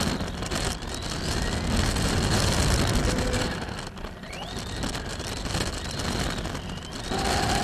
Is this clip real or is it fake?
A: real